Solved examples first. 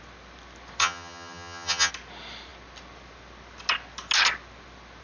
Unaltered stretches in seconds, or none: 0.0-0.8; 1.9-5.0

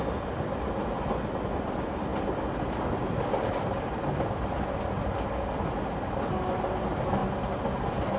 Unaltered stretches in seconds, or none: 0.0-8.2